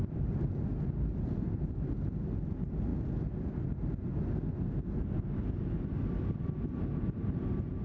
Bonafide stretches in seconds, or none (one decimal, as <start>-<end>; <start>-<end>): 0.0-7.8